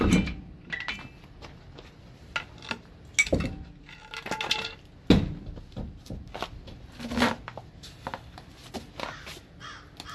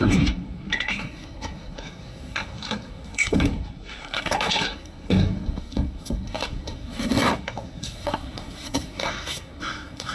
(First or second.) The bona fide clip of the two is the first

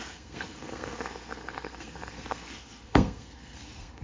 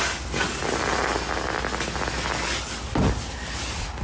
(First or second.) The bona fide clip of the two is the second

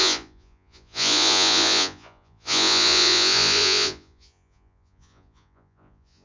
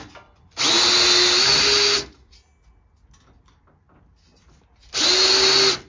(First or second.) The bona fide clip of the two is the second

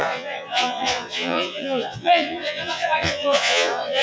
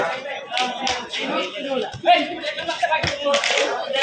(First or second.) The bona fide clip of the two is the second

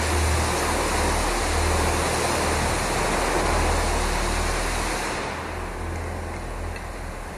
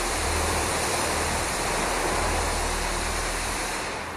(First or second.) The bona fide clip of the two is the first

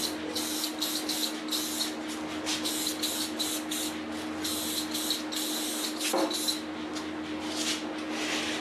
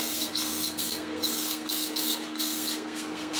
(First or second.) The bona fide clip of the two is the first